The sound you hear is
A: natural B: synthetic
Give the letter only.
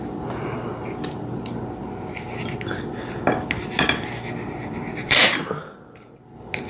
A